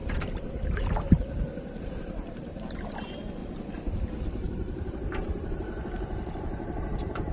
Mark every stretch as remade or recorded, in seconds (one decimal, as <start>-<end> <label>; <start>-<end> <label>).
0.0-1.8 recorded; 1.8-3.4 remade; 3.4-4.2 recorded; 4.2-7.3 remade